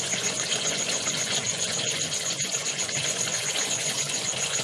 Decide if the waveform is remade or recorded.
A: remade